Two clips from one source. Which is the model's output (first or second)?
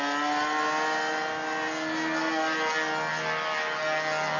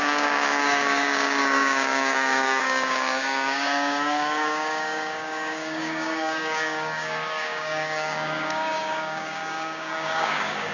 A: second